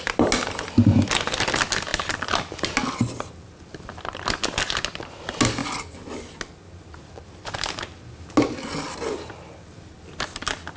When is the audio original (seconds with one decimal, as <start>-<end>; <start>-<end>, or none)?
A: 0.0-10.8